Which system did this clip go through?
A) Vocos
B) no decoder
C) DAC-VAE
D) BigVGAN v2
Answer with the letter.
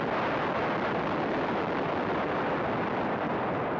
B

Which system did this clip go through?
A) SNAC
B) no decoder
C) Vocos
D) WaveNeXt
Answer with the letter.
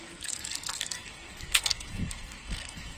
A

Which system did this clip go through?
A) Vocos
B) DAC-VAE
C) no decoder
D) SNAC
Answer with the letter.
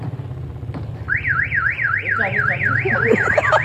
C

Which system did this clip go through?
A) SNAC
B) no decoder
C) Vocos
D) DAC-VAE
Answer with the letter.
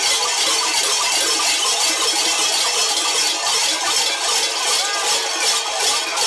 B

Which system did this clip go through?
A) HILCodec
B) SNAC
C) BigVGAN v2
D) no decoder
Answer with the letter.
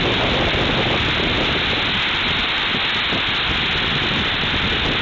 D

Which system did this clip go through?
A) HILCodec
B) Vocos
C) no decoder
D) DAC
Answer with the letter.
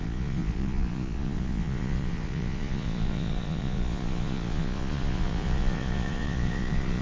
B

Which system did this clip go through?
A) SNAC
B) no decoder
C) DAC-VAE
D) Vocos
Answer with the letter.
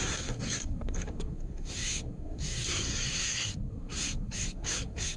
A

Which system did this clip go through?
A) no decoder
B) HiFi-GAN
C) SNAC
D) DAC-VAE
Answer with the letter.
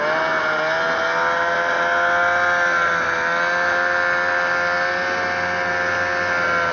A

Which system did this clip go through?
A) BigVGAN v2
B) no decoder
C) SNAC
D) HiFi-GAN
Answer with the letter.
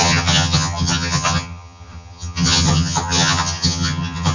D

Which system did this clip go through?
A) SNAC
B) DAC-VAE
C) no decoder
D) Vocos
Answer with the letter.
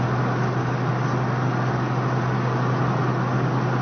C